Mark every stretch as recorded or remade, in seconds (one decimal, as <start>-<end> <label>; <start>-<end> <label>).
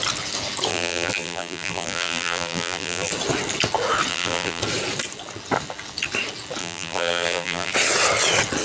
0.0-0.7 recorded; 0.7-3.1 remade; 3.1-4.1 recorded; 4.1-4.6 remade; 4.6-6.6 recorded; 6.6-7.7 remade; 7.7-8.6 recorded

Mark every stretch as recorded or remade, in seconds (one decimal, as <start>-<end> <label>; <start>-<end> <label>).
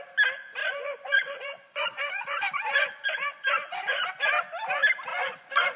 0.0-0.6 recorded; 0.6-4.1 remade; 4.1-5.1 recorded; 5.1-5.8 remade